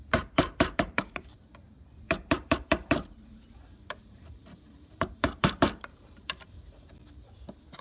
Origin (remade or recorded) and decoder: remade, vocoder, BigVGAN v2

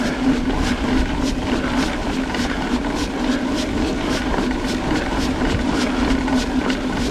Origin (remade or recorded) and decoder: recorded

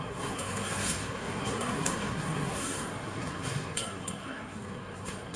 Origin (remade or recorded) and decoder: remade, codec, SNAC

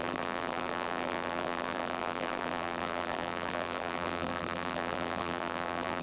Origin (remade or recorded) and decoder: remade, vocoder, BigVGAN v2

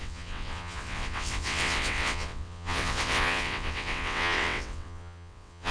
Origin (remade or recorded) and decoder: remade, vocoder, WaveNeXt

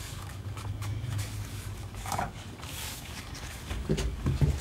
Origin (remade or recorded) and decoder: remade, codec, DAC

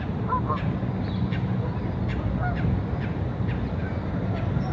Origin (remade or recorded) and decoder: recorded